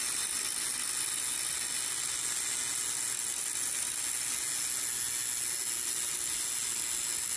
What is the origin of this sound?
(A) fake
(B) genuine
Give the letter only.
B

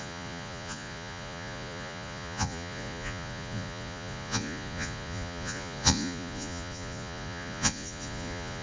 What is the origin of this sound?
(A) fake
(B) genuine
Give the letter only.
A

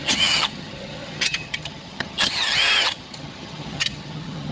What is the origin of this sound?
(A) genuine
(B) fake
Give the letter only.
B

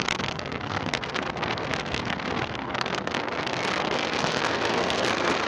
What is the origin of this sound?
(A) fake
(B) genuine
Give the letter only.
A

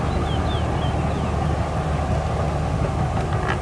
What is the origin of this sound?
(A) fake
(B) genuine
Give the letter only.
B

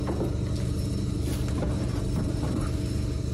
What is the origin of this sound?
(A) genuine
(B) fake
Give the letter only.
A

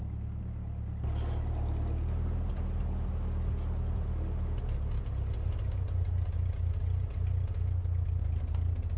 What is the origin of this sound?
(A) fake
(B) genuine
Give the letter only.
B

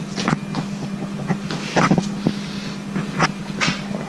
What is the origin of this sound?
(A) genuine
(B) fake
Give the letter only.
A